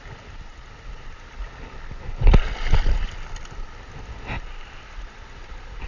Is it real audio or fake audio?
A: real